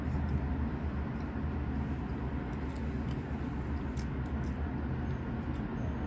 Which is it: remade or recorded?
recorded